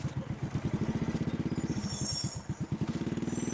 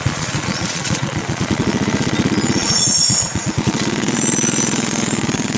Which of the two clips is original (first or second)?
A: first